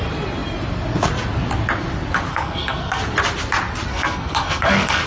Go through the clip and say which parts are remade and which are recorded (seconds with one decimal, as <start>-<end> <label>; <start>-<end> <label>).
0.0-2.3 recorded; 2.3-3.0 remade; 3.0-3.9 recorded; 3.9-5.1 remade

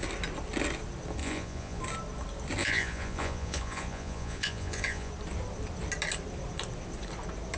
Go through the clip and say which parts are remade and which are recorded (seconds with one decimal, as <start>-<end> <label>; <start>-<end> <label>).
0.0-1.2 recorded; 1.2-1.8 remade; 1.8-2.6 recorded; 2.6-5.1 remade; 5.1-7.6 recorded

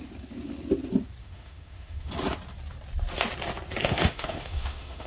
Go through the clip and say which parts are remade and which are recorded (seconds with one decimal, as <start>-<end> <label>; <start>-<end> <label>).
0.0-1.2 recorded; 1.2-2.1 remade; 2.1-3.8 recorded; 3.8-5.1 remade